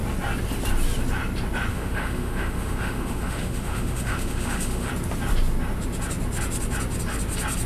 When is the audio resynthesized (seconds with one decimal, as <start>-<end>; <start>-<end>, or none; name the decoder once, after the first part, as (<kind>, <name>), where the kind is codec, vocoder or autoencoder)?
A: 1.7-4.9 (autoencoder, DAC-VAE)